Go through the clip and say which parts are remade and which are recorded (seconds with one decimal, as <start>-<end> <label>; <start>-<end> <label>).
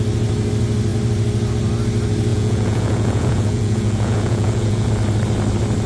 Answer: 0.0-2.3 recorded; 2.3-4.9 remade; 4.9-5.9 recorded